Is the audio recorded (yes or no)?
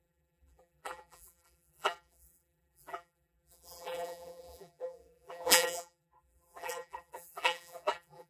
no